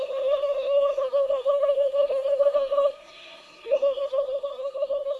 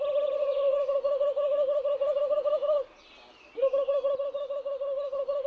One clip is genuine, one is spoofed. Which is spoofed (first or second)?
first